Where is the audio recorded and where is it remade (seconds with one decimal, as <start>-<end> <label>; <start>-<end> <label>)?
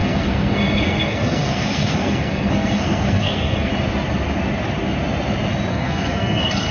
0.0-3.7 remade; 3.7-5.7 recorded; 5.7-6.7 remade